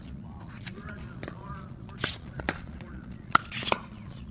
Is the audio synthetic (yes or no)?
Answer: yes